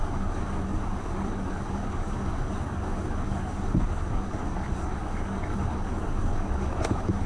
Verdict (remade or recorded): remade